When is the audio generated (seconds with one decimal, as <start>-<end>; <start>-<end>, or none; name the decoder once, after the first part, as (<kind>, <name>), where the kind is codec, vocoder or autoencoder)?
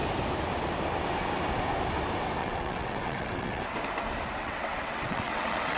2.4-3.6 (vocoder, WaveNeXt); 4.4-5.8